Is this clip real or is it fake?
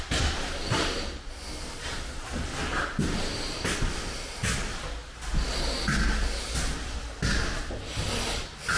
real